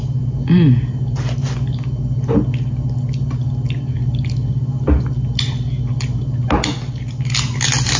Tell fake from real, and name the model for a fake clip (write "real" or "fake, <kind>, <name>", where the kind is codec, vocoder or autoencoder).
real